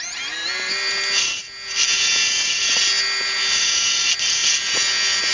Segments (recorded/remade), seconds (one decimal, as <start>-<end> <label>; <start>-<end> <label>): 0.0-5.3 recorded